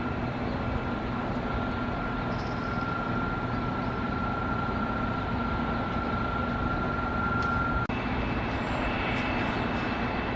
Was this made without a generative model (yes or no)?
yes